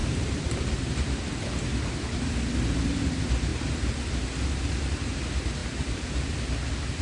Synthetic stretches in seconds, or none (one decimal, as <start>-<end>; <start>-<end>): 0.0-0.9; 5.6-6.5